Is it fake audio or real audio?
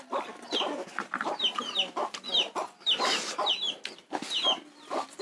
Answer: real